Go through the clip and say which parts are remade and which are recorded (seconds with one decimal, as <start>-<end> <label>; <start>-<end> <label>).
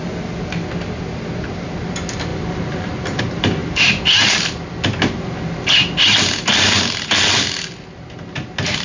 0.0-8.8 recorded